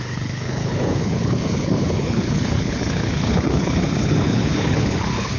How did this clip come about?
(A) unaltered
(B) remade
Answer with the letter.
B